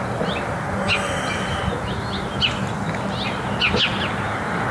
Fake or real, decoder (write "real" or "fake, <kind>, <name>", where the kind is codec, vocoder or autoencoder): real